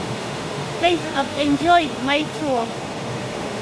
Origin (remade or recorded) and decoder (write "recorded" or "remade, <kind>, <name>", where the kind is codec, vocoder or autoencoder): remade, autoencoder, DAC-VAE